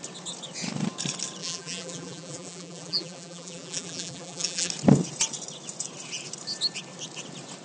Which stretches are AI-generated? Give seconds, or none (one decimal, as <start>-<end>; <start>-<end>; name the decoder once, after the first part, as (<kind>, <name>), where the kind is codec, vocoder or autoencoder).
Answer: 1.4-4.7 (vocoder, BigVGAN v2)